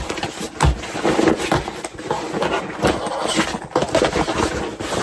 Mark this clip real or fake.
real